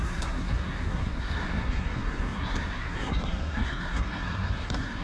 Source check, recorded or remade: remade